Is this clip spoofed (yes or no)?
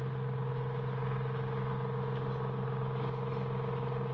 no